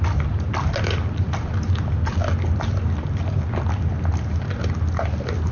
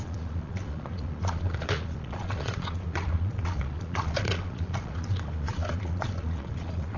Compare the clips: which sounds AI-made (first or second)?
second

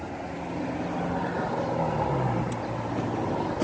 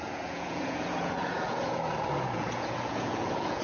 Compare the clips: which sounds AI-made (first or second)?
second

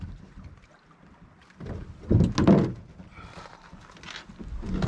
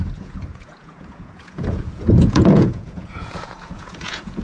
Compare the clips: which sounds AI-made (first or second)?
second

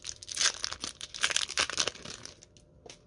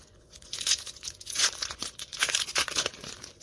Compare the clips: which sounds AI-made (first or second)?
second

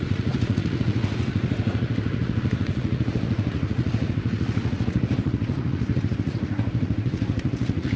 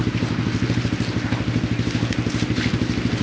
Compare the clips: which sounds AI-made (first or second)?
first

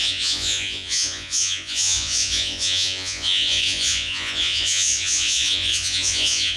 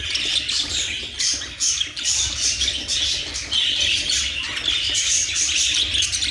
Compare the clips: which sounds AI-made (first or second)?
first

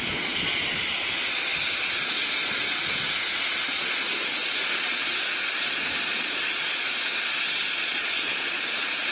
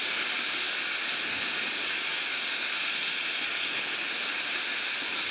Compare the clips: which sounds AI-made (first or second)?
first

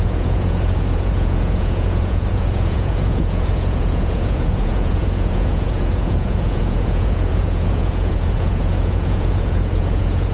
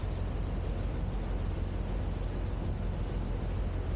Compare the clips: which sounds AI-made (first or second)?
first